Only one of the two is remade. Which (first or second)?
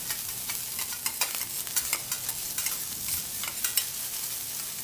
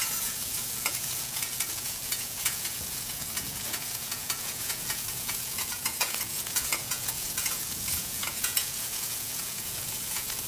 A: second